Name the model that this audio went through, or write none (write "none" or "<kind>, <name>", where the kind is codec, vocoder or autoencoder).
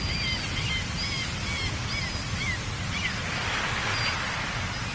none